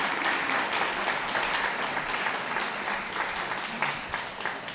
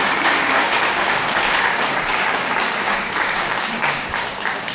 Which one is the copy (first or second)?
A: second